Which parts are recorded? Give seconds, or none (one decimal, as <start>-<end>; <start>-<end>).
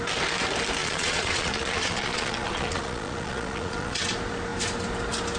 0.0-0.8; 4.0-5.4